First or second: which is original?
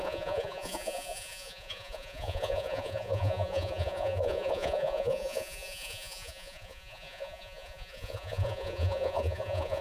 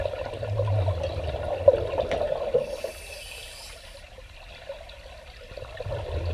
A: second